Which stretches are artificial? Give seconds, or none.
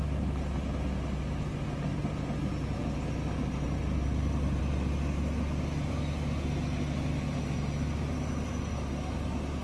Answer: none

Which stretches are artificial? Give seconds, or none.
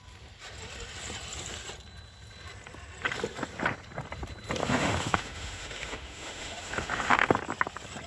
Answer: 4.6-7.3 (autoencoder, DAC-VAE)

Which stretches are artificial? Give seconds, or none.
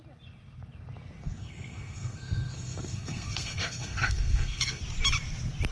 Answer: 1.4-4.8 (codec, SNAC)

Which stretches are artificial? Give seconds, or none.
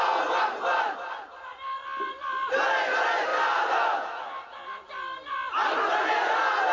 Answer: 3.3-5.3 (vocoder, BigVGAN v2)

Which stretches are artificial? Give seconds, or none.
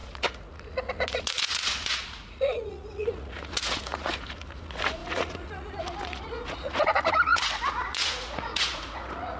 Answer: 0.0-9.4 (vocoder, Vocos)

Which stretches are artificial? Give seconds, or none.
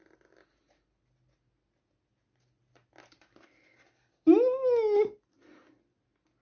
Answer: none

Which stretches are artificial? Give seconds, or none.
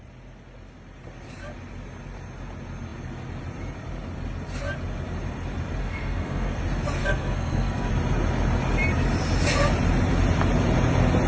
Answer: 5.8-6.6 (codec, SNAC); 7.0-7.9